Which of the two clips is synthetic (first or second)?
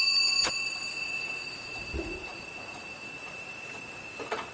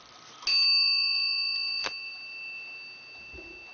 first